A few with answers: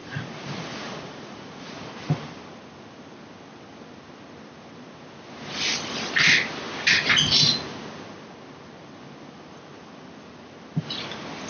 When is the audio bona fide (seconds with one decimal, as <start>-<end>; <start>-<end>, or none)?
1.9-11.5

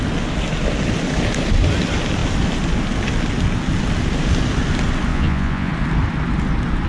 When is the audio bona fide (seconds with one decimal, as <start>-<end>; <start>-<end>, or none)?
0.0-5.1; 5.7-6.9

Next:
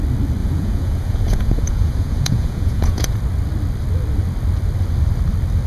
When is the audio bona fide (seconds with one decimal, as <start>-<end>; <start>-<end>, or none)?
0.0-0.4; 3.2-5.7